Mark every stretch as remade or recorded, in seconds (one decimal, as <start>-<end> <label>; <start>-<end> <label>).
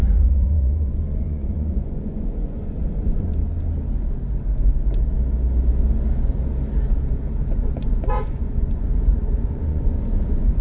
0.0-3.4 remade; 3.4-7.4 recorded; 7.4-10.6 remade